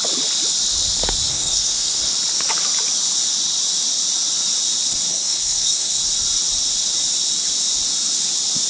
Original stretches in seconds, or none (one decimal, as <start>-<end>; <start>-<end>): 0.0-1.3; 2.0-5.1; 6.0-8.7